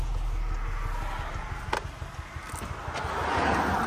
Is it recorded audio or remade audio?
recorded